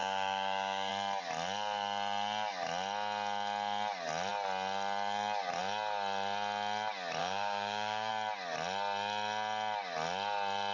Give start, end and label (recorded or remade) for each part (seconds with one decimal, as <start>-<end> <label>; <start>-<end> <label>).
0.0-0.9 remade; 0.9-7.2 recorded; 7.2-8.1 remade; 8.1-10.7 recorded